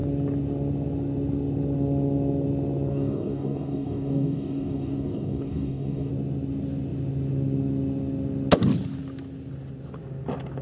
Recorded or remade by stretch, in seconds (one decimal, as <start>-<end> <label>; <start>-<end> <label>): 0.0-2.9 recorded; 2.9-6.1 remade; 6.1-10.6 recorded